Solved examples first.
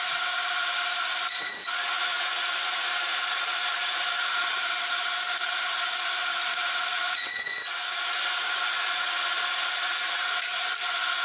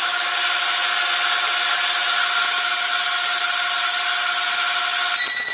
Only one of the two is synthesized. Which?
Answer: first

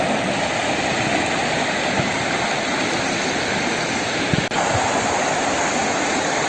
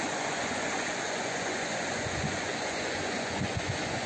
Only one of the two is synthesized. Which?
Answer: second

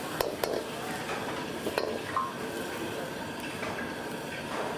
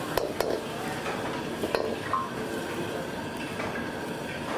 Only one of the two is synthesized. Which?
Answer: first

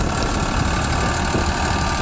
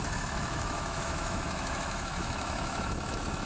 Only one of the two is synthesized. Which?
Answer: second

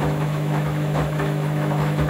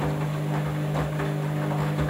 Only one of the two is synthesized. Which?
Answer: first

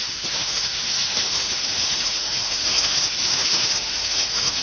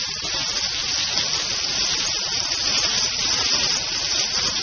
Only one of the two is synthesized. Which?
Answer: first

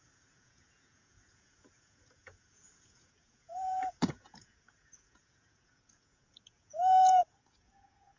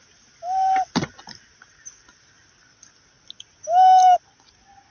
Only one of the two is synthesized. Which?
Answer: first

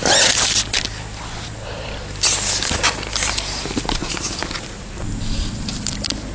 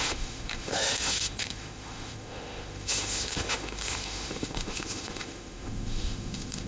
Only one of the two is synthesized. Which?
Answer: second